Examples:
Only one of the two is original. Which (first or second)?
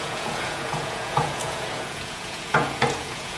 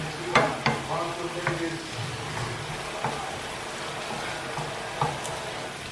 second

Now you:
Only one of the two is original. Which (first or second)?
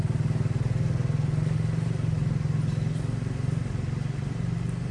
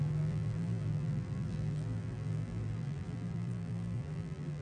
first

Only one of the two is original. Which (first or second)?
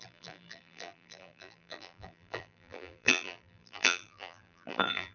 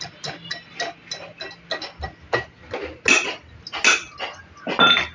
second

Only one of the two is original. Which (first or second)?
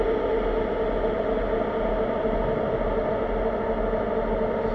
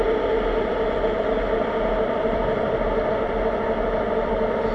first